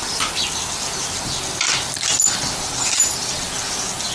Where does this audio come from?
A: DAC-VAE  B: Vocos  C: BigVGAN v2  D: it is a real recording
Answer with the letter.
D